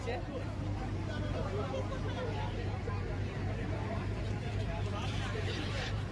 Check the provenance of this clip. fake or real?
fake